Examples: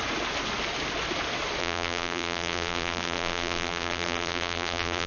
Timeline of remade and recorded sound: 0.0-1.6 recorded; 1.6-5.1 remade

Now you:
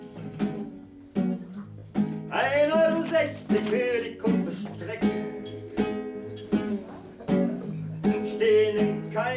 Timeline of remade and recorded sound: 0.0-9.4 recorded

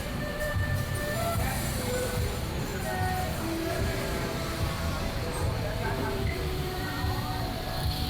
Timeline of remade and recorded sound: 0.0-2.7 remade; 2.7-3.7 recorded; 3.7-8.1 remade